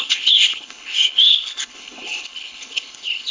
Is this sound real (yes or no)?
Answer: no